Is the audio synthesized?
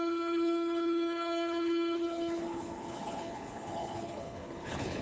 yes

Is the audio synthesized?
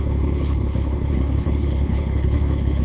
yes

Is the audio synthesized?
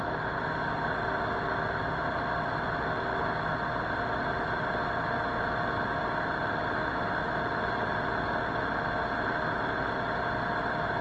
no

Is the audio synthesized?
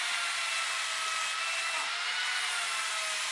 no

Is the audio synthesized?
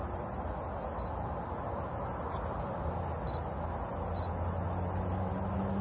no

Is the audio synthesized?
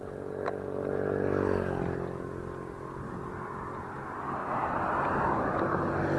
no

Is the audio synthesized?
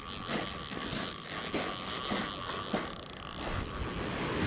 no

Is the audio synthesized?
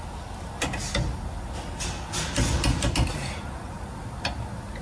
no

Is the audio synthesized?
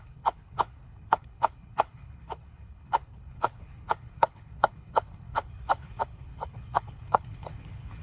yes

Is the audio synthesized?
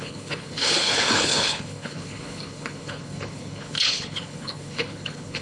yes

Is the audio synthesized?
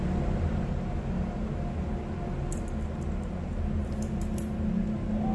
no